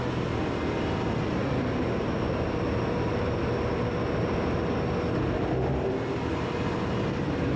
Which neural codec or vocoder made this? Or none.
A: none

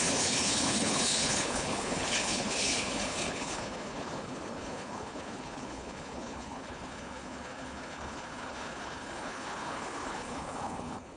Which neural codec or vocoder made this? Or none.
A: codec, HILCodec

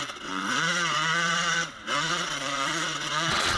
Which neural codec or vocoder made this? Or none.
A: vocoder, WaveNeXt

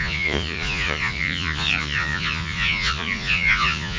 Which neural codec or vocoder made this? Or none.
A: vocoder, Vocos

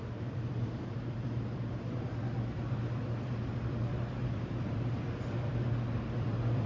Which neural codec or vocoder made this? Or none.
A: vocoder, BigVGAN v2